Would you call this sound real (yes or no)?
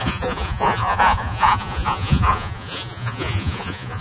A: no